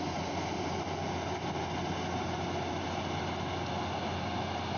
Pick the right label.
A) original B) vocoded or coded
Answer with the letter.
A